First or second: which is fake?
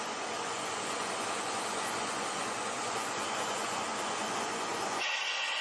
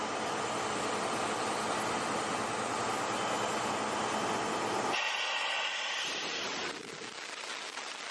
first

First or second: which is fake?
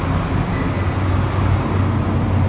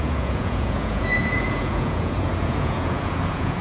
second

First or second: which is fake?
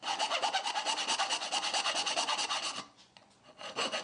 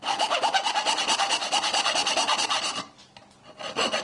first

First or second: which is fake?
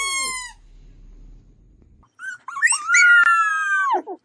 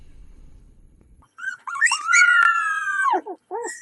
second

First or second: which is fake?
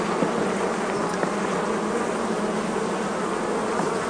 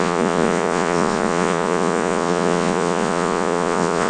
second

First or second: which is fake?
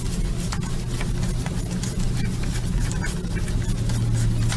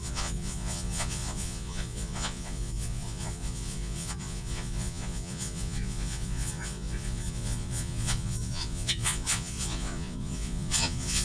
second